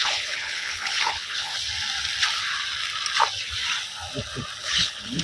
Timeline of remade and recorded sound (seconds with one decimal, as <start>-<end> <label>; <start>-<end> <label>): 0.0-1.5 remade; 1.5-4.6 recorded; 4.6-5.2 remade